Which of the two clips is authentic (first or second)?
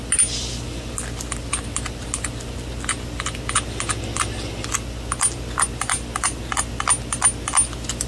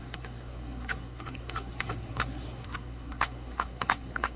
first